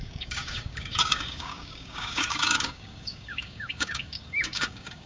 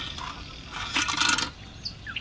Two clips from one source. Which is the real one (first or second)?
second